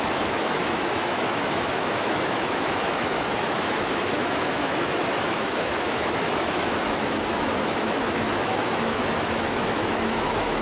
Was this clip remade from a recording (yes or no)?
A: yes